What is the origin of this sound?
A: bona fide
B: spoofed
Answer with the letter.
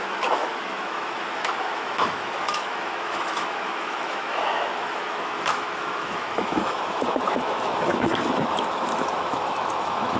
B